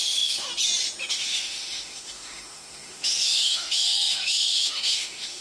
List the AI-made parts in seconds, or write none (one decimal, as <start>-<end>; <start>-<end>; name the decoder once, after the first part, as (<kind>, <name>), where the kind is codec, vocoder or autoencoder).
0.0-0.5 (autoencoder, DAC-VAE); 1.1-5.4